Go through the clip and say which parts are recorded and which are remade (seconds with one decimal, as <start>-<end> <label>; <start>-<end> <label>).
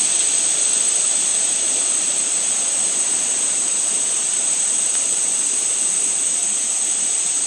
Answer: 0.0-1.3 recorded; 1.3-5.8 remade; 5.8-6.4 recorded; 6.4-7.5 remade